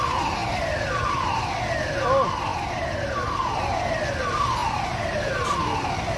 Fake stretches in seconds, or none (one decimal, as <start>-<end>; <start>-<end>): 2.5-3.5